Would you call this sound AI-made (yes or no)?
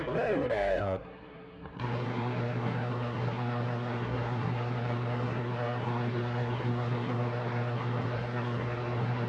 yes